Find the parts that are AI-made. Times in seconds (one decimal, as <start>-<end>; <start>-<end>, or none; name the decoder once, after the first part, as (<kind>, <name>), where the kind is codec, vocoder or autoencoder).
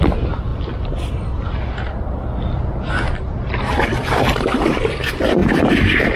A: none